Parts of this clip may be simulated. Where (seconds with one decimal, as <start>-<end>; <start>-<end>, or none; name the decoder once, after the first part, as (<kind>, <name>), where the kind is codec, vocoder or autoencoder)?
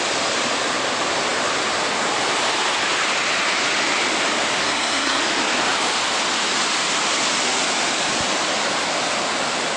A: 4.6-5.2 (codec, SNAC)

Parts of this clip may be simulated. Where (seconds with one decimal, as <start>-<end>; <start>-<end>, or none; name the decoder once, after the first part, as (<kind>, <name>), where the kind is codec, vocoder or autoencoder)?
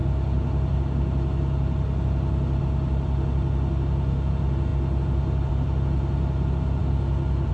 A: none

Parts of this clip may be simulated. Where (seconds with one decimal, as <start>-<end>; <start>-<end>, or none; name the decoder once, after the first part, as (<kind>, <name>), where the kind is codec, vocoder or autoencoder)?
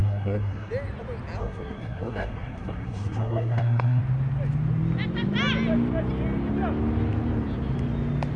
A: 0.0-0.7 (codec, SNAC); 1.4-4.0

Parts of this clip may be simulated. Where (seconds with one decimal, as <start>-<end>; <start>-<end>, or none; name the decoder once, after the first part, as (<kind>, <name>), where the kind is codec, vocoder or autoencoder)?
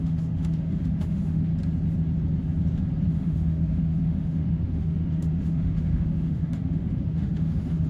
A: 0.0-1.5 (autoencoder, DAC-VAE); 3.1-7.9